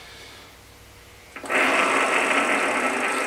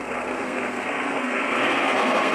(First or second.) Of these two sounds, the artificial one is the second